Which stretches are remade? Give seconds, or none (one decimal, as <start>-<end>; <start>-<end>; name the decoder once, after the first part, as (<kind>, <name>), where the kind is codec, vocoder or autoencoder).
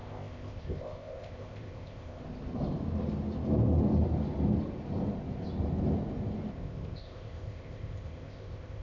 0.0-2.2 (codec, ZipCodec); 6.5-8.8